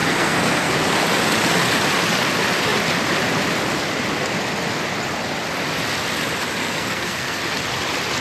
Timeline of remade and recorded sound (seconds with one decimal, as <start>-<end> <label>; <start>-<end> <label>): 0.0-1.0 remade; 1.0-6.6 recorded; 6.6-7.4 remade; 7.4-8.2 recorded